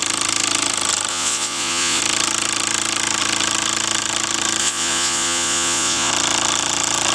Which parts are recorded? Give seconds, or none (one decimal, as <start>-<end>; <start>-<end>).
0.0-1.1; 2.0-4.6; 6.1-7.1